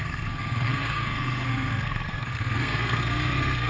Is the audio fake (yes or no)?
yes